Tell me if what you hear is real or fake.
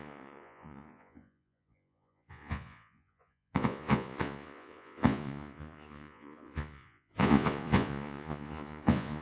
fake